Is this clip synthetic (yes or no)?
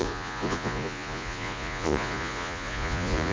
yes